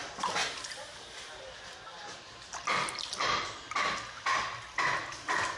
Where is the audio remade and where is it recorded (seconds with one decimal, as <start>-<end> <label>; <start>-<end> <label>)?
0.0-5.6 recorded